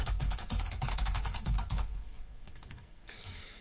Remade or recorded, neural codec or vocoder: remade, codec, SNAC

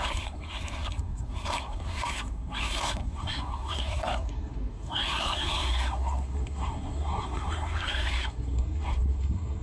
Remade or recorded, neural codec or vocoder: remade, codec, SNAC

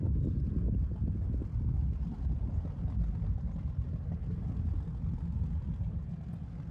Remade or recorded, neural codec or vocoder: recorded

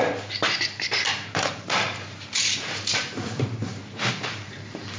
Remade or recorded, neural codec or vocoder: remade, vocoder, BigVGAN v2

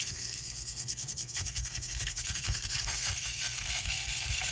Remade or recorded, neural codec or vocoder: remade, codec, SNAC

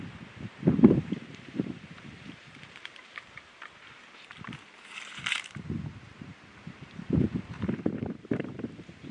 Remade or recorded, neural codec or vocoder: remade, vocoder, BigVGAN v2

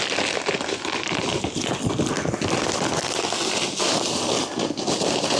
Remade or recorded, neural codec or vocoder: recorded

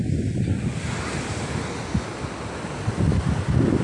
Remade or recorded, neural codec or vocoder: recorded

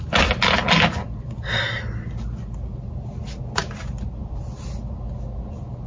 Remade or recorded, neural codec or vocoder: recorded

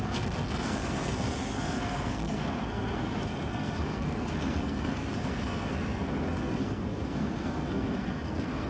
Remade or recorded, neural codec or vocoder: remade, codec, SNAC